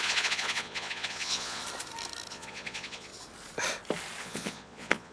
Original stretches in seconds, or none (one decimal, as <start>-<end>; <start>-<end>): 1.6-2.3; 3.1-4.2